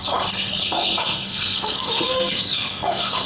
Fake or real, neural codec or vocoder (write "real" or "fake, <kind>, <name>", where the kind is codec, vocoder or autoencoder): fake, codec, SNAC